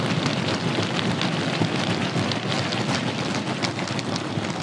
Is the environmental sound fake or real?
real